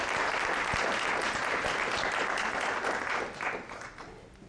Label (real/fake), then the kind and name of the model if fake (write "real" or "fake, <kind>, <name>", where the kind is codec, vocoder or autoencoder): real